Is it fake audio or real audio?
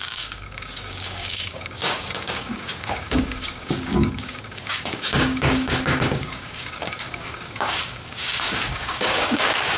fake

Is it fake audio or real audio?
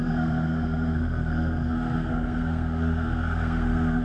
fake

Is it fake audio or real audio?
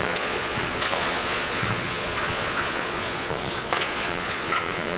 fake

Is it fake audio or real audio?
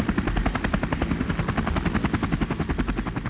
real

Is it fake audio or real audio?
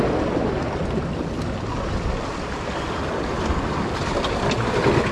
real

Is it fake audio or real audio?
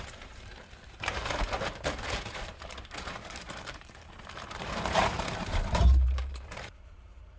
fake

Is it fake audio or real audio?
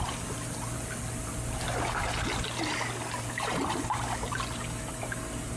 real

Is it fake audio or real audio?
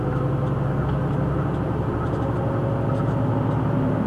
real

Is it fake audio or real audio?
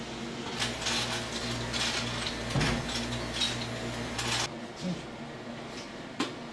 real